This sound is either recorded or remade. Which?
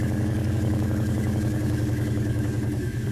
remade